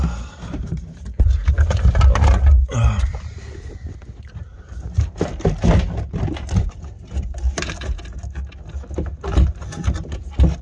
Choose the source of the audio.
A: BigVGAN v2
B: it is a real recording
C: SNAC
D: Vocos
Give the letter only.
B